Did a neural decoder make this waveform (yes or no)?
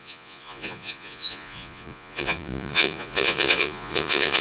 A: yes